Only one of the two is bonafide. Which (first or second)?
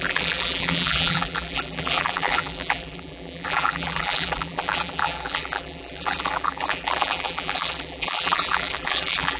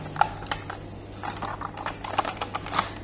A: second